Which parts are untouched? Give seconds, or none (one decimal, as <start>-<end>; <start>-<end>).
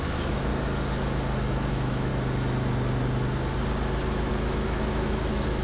0.5-1.7; 2.1-4.3